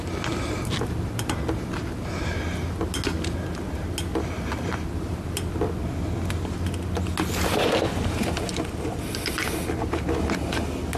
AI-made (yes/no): no